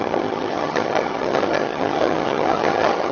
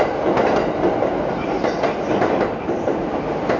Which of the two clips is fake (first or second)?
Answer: first